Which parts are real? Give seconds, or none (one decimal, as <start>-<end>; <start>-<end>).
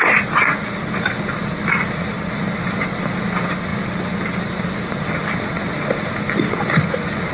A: 0.0-7.3